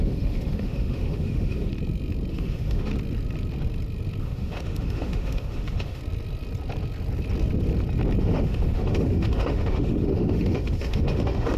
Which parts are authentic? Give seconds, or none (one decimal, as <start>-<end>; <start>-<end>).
1.7-2.3; 2.9-4.2; 6.0-8.2